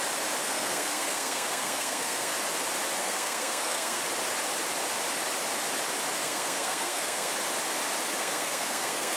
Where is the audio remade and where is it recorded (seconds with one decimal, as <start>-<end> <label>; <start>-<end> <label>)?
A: 0.0-0.4 recorded; 0.4-2.3 remade; 2.3-3.0 recorded; 3.0-4.0 remade; 4.0-6.2 recorded; 6.2-7.3 remade; 7.3-8.2 recorded; 8.2-9.2 remade